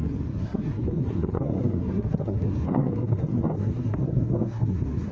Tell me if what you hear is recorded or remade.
remade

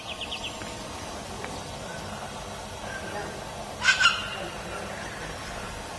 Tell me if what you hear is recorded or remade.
recorded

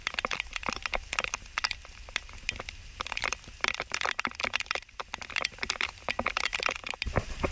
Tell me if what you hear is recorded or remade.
recorded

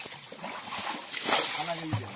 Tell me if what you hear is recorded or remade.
recorded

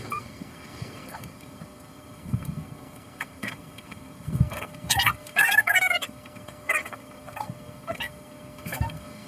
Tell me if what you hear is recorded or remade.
remade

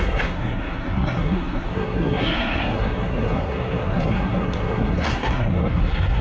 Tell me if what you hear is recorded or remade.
remade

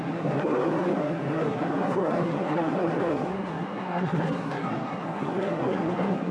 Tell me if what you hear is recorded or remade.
remade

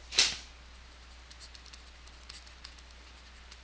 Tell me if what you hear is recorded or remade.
recorded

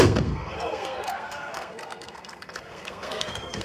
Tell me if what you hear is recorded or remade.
remade